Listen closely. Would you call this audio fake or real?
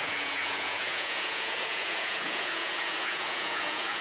fake